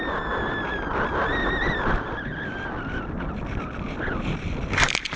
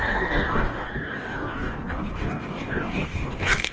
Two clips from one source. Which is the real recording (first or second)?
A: first